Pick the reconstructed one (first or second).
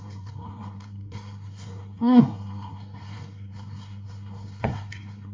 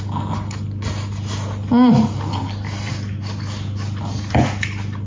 first